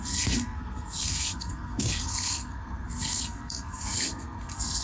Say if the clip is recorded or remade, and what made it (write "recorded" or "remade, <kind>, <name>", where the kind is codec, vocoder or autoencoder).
remade, codec, SNAC